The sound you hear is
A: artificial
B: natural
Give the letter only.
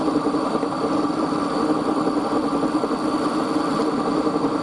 B